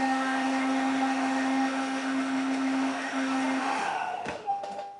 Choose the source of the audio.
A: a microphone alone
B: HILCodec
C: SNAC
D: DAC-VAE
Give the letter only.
D